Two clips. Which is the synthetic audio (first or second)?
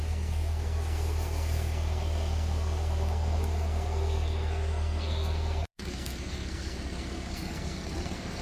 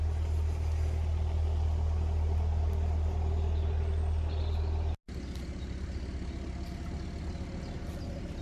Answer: first